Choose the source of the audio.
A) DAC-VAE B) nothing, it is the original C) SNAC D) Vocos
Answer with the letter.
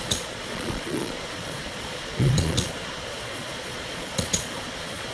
D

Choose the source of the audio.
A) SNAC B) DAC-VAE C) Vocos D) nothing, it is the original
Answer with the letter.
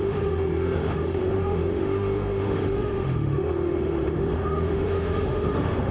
B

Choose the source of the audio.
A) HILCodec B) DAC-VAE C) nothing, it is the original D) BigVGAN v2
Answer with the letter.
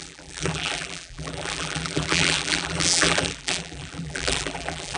D